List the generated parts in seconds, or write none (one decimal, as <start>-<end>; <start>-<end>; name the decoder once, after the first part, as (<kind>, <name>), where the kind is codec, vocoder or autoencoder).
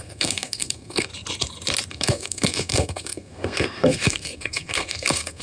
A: 0.0-1.1 (codec, SNAC); 1.9-5.4